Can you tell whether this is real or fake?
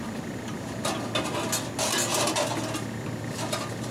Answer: real